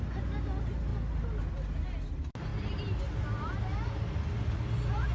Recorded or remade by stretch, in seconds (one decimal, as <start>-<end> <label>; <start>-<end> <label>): 0.0-5.1 recorded